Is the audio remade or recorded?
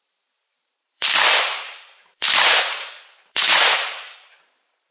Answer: remade